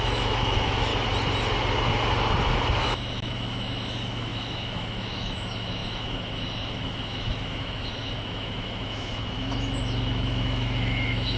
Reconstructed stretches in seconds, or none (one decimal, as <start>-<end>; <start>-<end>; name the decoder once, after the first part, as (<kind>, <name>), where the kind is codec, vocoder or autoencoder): 0.0-0.9 (autoencoder, DAC-VAE); 2.8-11.4